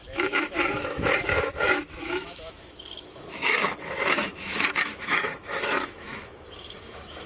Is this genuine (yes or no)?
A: no